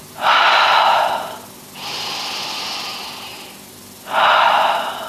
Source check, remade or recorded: recorded